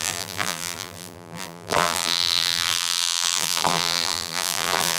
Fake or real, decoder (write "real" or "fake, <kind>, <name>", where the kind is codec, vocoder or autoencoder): fake, vocoder, BigVGAN v2